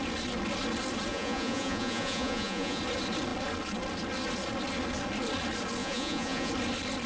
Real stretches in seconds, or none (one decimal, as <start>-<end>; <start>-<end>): 0.0-1.1; 2.8-5.8; 6.5-7.1

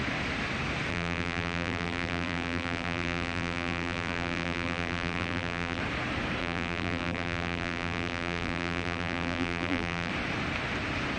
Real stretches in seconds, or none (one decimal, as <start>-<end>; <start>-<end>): 0.0-0.9; 5.8-6.4; 10.1-11.2

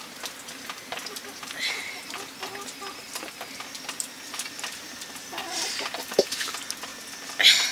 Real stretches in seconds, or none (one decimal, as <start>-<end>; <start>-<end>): 0.0-5.4; 6.3-7.7

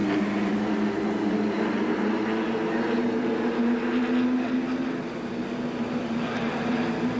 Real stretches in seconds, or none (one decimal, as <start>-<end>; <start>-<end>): 0.0-7.2

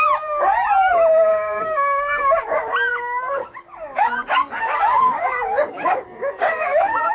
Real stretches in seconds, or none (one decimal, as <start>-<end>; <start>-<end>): 0.0-1.3; 2.2-2.9